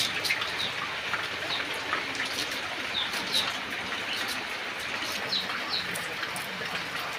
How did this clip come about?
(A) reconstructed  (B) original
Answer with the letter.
B